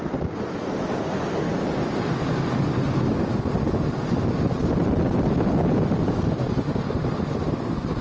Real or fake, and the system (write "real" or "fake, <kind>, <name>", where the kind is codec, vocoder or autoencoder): real